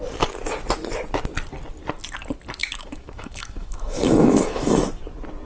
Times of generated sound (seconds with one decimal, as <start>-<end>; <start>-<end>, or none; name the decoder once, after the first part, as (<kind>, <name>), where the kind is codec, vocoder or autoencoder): 2.6-4.8 (autoencoder, DAC-VAE)